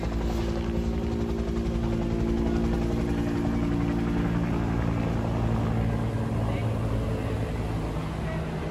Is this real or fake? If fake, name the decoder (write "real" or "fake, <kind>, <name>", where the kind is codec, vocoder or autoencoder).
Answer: real